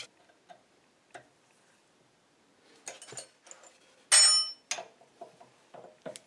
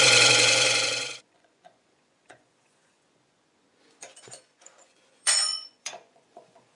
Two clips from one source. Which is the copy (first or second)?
second